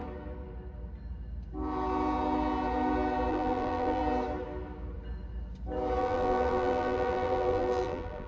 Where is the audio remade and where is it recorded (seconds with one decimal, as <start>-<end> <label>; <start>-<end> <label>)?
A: 0.0-3.3 recorded; 3.3-4.0 remade; 4.0-6.0 recorded; 6.0-8.3 remade